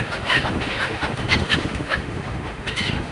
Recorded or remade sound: remade